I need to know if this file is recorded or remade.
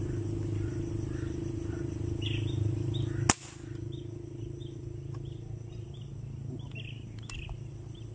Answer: recorded